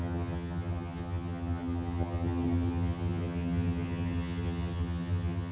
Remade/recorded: remade